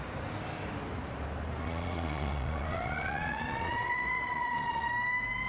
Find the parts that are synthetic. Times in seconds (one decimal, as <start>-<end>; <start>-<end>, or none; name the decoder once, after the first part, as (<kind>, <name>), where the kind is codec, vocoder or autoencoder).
1.6-4.9 (vocoder, Vocos)

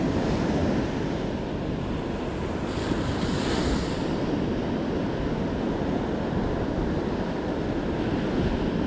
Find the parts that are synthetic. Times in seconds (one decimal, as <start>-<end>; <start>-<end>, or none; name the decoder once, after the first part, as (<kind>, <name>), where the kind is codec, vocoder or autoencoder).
none

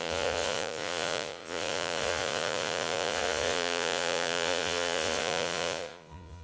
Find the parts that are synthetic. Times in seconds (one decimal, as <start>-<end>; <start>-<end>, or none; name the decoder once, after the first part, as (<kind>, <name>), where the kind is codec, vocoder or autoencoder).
0.0-6.4 (vocoder, Vocos)

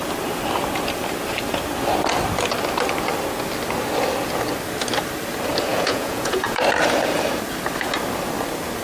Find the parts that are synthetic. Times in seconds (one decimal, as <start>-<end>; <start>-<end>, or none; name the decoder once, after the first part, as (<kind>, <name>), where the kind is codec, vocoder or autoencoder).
5.7-6.6 (vocoder, Vocos)

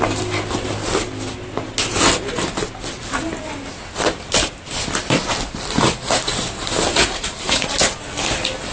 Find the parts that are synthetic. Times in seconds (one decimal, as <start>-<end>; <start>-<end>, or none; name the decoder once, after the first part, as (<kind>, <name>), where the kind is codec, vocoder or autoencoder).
6.9-7.7 (vocoder, Vocos)

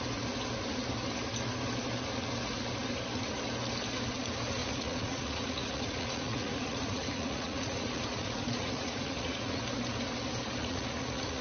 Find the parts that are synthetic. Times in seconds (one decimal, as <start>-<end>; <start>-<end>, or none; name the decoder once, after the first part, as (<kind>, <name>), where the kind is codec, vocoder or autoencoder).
4.6-9.6 (vocoder, Vocos); 10.6-11.4